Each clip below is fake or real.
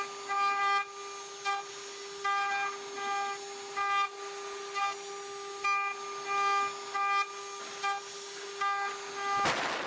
real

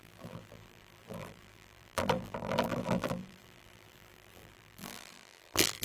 fake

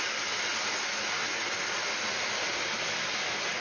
real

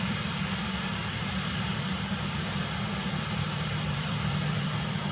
fake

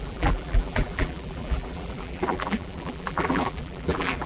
fake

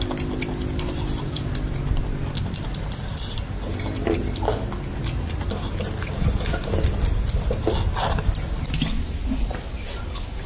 real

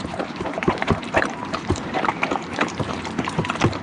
fake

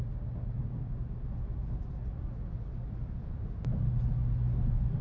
real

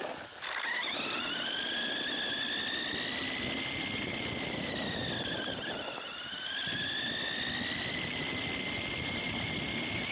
real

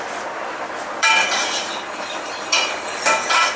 fake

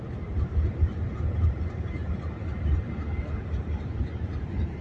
fake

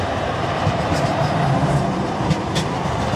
fake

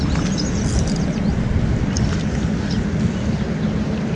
real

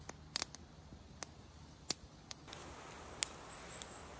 real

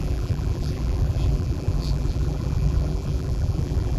fake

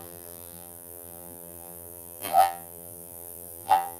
fake